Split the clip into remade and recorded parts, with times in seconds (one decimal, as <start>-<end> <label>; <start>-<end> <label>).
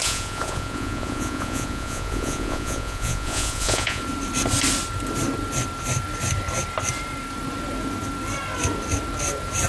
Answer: 0.0-4.0 remade; 4.0-9.7 recorded